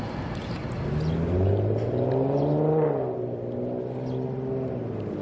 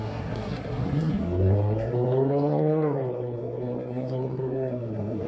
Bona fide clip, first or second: first